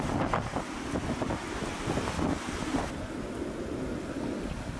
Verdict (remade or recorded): recorded